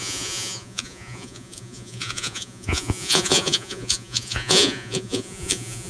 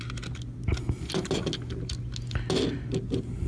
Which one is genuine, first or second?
second